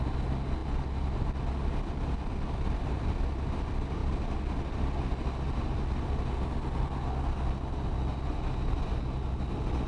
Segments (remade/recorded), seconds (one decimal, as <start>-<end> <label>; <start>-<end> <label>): 0.0-9.9 recorded